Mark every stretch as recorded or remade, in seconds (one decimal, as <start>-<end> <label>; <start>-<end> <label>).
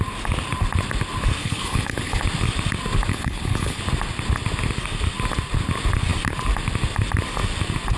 0.0-1.4 recorded; 1.4-2.2 remade; 2.2-3.1 recorded; 3.1-3.8 remade; 3.8-8.0 recorded